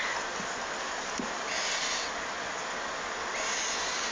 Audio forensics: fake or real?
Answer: real